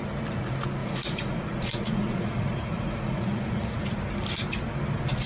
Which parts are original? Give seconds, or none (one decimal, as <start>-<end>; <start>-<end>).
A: 0.0-0.8; 4.0-5.3

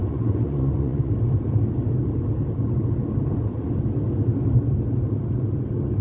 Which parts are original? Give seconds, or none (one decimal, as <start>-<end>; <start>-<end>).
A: 1.1-6.0

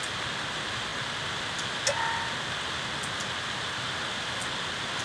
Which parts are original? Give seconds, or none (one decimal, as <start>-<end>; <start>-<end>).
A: 0.0-5.0

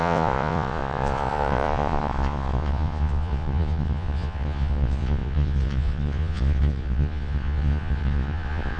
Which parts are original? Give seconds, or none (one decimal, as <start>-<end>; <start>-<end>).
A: none

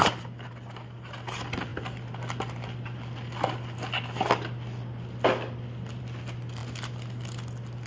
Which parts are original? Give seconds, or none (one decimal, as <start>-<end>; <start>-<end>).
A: 0.0-7.9

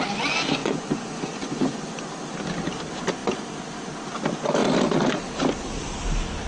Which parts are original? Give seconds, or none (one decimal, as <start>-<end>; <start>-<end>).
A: 0.0-0.6; 2.1-6.5

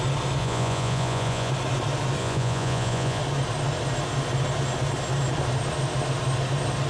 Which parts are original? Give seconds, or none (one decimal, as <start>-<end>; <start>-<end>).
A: 0.0-0.4; 1.5-2.2; 3.2-6.9

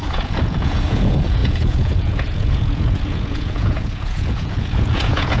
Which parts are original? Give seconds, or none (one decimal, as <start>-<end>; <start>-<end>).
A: none